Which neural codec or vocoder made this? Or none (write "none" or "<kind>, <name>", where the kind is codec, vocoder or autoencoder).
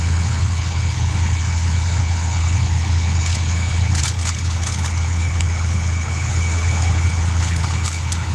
codec, HILCodec